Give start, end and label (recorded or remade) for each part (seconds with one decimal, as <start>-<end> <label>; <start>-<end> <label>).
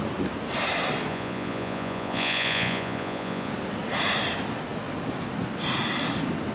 0.0-1.1 recorded; 1.1-3.5 remade; 3.5-6.5 recorded